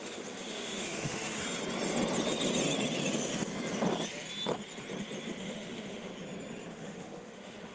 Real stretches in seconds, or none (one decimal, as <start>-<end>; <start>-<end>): 1.4-5.4; 6.1-6.7